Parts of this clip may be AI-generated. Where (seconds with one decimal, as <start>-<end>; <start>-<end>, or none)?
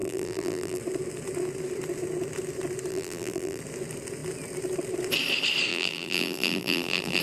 0.0-0.8; 2.9-3.6; 5.7-7.2